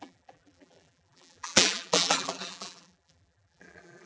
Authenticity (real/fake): fake